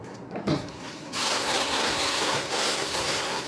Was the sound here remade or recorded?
remade